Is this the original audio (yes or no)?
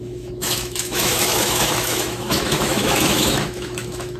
no